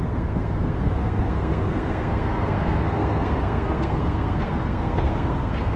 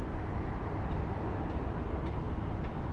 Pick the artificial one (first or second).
first